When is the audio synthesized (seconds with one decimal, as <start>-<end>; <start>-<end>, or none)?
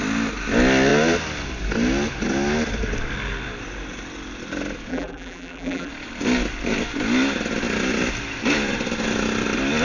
4.9-5.9